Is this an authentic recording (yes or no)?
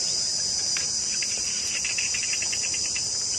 no